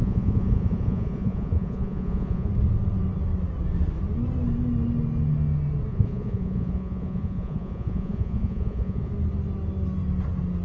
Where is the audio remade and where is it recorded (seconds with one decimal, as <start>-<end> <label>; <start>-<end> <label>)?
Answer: 0.0-2.5 remade; 2.5-5.9 recorded; 5.9-9.1 remade; 9.1-10.6 recorded